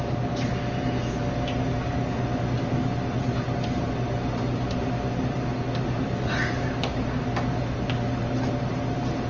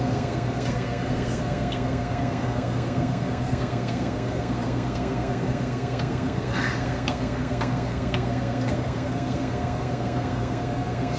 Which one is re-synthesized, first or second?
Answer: second